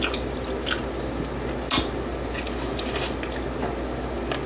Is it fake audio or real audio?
real